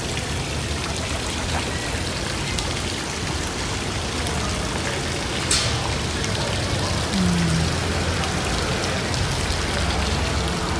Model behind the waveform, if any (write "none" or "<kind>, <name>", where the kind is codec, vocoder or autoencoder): none